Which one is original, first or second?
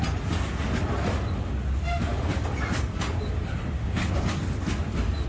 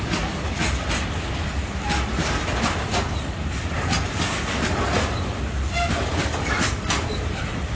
first